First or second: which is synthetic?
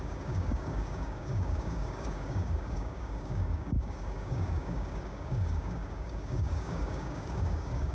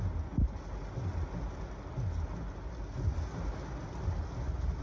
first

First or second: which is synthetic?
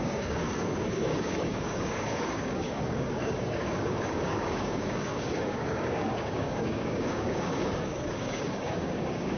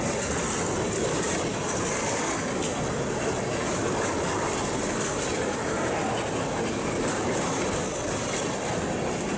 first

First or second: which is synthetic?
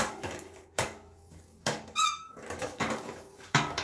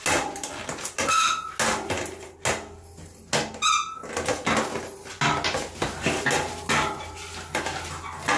first